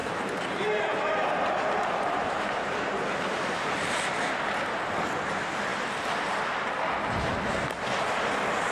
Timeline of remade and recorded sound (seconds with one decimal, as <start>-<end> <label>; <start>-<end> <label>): 0.0-4.0 remade; 4.0-8.7 recorded